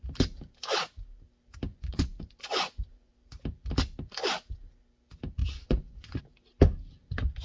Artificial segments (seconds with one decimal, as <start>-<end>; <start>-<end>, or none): 1.7-3.1; 5.4-6.2